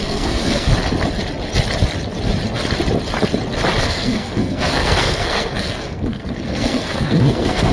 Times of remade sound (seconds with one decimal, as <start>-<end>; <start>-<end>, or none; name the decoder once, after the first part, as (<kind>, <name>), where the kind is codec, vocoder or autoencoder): 0.0-0.7 (codec, SNAC); 3.8-7.7